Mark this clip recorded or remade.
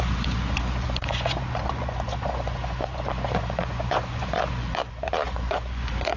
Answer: remade